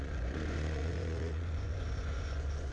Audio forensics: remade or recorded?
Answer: remade